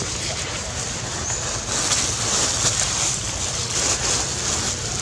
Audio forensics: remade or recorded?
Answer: recorded